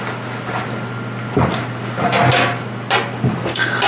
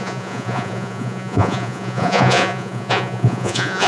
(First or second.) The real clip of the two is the first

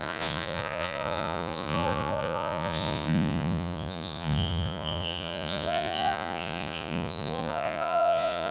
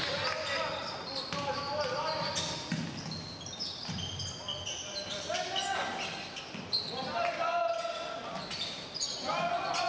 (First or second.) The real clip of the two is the second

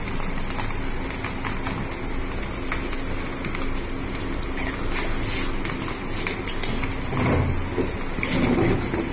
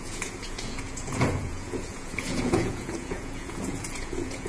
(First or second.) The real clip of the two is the first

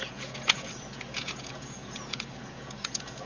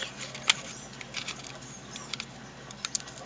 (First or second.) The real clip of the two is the second